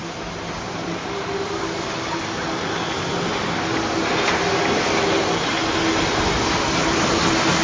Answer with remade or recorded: recorded